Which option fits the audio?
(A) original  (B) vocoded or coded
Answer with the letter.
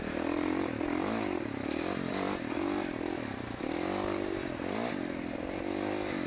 A